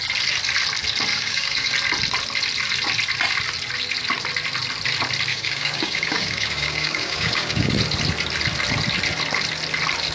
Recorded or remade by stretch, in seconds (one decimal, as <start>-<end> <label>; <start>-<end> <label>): 0.0-1.1 recorded; 1.1-1.7 remade; 1.7-5.3 recorded; 5.3-7.7 remade; 7.7-10.1 recorded